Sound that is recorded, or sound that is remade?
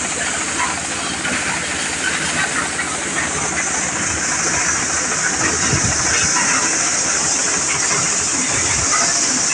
recorded